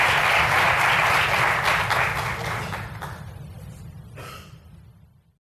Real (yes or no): yes